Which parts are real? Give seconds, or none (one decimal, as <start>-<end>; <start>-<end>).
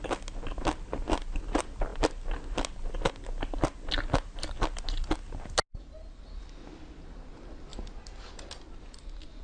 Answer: 0.0-9.4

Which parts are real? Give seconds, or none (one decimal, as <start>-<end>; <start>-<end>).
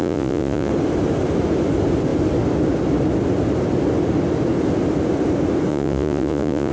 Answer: 0.7-5.7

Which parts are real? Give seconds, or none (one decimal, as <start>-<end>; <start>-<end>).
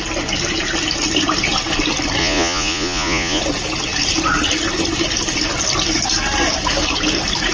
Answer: 0.0-2.2; 3.4-7.5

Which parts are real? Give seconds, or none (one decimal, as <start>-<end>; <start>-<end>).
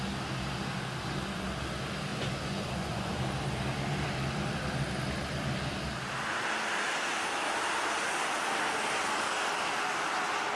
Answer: 0.0-2.1; 3.2-10.6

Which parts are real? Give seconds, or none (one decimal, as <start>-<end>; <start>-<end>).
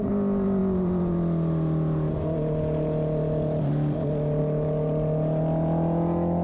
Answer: 0.0-6.4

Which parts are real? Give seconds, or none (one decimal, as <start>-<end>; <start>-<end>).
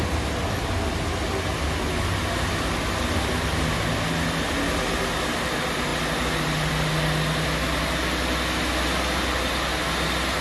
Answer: 0.0-10.4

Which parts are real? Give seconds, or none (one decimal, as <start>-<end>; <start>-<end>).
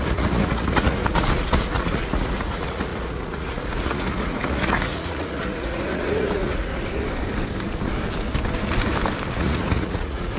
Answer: 6.7-9.3